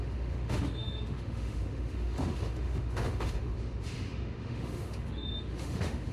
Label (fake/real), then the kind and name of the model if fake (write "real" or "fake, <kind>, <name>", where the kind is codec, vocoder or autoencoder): fake, autoencoder, DAC-VAE